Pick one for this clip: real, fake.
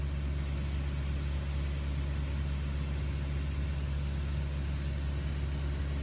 real